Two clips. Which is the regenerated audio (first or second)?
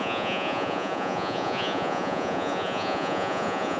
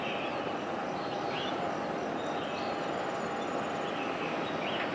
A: first